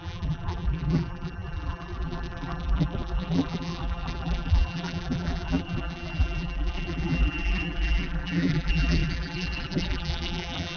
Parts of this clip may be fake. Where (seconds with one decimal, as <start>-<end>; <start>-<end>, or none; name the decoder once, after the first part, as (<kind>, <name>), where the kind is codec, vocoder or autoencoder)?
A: 0.0-10.8 (vocoder, BigVGAN v2)